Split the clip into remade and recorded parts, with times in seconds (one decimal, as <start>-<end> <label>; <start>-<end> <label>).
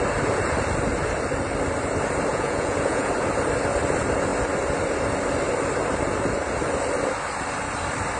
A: 0.0-2.3 recorded; 2.3-3.1 remade; 3.1-8.2 recorded